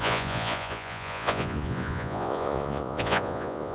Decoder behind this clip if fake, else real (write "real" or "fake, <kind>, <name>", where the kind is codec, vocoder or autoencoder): fake, vocoder, Vocos